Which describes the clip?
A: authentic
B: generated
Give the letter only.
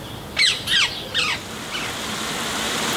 A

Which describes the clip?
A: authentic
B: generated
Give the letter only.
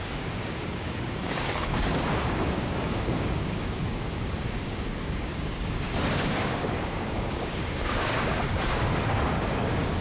B